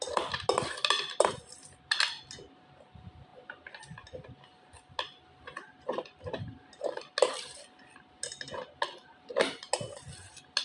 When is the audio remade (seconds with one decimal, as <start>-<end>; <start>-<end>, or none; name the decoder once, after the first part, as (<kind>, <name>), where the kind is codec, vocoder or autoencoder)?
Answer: none